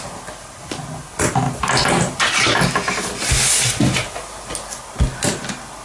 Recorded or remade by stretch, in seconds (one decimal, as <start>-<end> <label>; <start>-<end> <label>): 0.0-5.8 recorded